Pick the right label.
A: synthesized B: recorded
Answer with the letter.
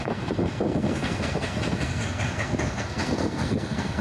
A